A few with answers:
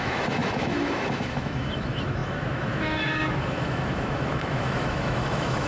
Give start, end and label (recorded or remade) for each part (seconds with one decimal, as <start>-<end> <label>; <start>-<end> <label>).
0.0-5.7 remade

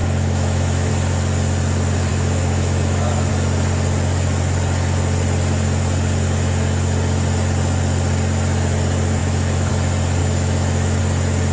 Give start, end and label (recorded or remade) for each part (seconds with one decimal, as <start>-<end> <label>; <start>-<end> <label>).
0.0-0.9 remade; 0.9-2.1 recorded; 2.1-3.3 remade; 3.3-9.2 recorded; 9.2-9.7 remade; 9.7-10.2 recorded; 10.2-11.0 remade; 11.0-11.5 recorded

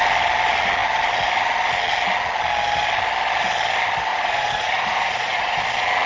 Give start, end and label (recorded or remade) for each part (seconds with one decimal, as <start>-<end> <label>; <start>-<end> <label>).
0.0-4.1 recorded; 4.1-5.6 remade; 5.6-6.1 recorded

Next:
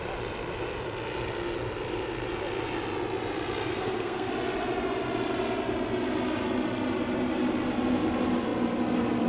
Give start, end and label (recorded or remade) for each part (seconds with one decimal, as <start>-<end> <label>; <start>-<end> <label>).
0.0-3.7 recorded; 3.7-4.3 remade; 4.3-9.3 recorded